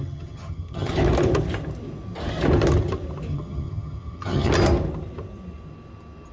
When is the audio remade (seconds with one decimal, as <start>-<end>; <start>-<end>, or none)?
0.0-0.9; 3.3-4.5